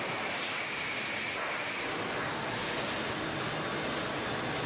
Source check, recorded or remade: recorded